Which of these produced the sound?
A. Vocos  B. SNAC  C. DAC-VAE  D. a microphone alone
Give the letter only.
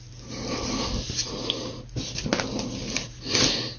D